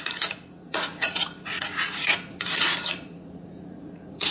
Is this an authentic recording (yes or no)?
no